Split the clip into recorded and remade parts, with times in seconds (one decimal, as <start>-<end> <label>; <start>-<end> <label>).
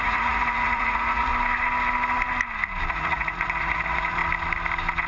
0.0-1.3 remade; 1.3-2.9 recorded; 2.9-4.2 remade; 4.2-5.1 recorded